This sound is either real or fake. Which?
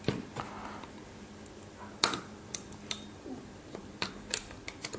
real